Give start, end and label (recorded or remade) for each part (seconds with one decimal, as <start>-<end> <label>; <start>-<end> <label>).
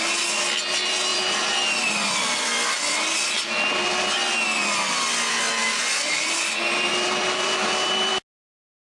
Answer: 0.0-8.8 recorded